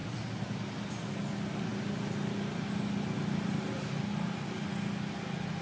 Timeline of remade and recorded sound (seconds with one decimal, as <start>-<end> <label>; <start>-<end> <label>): 0.0-5.6 recorded